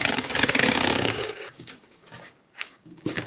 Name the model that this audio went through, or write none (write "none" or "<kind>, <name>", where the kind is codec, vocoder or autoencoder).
codec, DAC